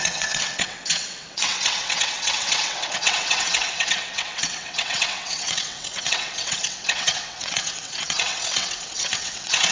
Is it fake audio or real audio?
fake